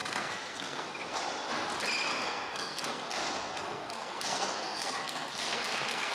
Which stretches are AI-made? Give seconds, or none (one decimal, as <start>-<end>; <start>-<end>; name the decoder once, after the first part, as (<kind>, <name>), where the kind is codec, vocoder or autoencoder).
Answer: 0.0-1.2 (codec, SNAC); 2.1-6.1

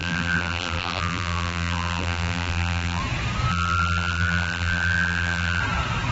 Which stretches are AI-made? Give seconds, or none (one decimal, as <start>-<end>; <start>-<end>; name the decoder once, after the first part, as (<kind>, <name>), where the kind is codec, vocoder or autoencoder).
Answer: 0.0-3.0 (vocoder, BigVGAN v2); 3.5-5.6

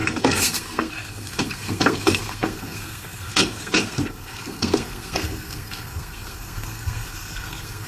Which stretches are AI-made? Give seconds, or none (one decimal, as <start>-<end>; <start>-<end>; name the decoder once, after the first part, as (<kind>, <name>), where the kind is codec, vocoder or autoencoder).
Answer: 0.0-7.9 (codec, SNAC)

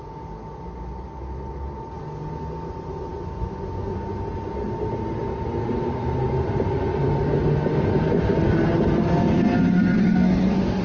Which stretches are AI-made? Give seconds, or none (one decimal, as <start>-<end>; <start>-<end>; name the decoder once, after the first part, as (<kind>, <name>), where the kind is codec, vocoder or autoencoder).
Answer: 10.0-10.8 (codec, SNAC)

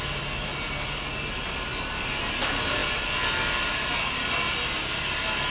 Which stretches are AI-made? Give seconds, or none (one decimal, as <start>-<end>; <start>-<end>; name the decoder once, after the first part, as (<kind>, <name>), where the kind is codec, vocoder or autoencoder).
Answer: none

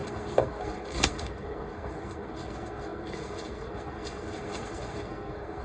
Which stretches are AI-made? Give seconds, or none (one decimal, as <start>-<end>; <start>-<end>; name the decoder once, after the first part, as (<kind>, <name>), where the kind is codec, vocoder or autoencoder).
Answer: 0.0-5.6 (codec, SNAC)

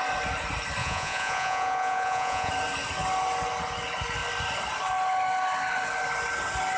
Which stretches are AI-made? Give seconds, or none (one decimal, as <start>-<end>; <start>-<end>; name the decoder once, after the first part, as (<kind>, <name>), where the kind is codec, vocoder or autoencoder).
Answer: 0.8-2.5 (vocoder, Vocos)